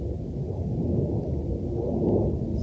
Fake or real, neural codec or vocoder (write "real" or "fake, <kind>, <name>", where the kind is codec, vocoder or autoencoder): real